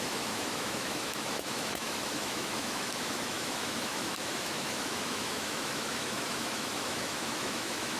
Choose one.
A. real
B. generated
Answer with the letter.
B